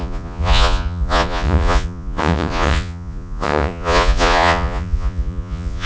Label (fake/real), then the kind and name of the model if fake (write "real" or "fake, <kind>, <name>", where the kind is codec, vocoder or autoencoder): fake, vocoder, Vocos